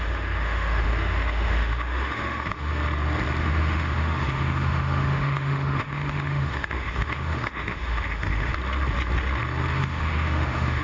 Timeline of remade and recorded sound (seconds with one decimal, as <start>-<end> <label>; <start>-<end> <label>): 0.0-2.7 remade; 2.7-3.4 recorded; 3.4-8.5 remade; 8.5-9.8 recorded; 9.8-10.8 remade